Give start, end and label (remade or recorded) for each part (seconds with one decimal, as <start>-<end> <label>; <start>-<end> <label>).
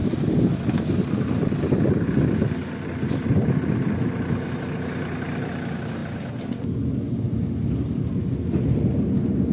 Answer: 0.0-9.5 recorded